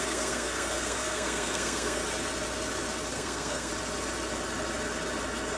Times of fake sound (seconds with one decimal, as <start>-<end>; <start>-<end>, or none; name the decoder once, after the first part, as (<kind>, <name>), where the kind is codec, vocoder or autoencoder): 0.0-2.0 (codec, SNAC); 3.1-3.7